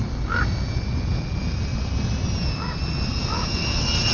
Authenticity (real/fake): real